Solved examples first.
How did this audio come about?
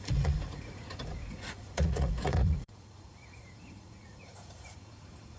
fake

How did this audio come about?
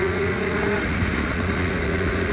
fake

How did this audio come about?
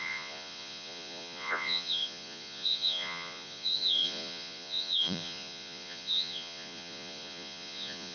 fake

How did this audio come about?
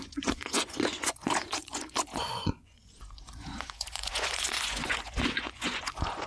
fake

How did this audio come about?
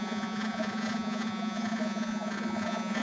fake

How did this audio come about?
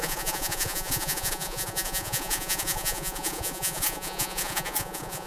fake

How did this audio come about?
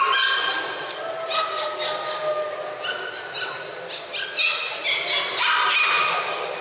real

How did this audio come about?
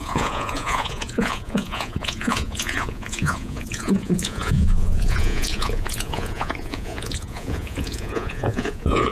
fake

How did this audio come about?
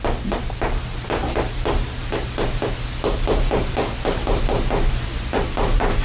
real